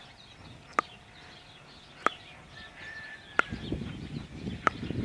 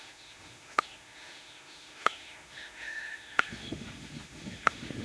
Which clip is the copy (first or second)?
second